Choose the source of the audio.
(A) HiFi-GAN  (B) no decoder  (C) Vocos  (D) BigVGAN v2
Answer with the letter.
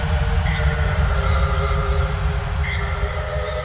B